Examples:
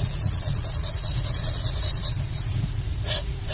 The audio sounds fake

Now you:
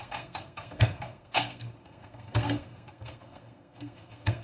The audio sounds fake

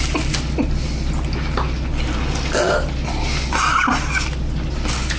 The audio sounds real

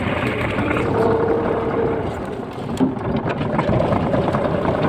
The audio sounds real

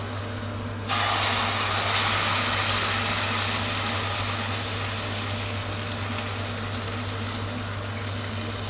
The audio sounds real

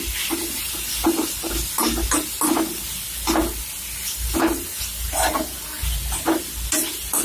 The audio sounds real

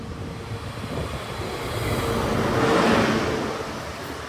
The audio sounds real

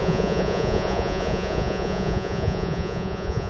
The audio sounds fake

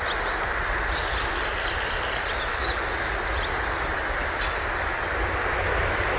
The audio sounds real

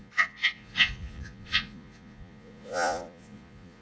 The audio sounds fake